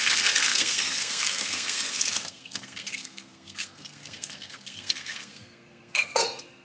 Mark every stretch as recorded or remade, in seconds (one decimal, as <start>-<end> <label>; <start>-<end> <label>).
0.0-6.6 remade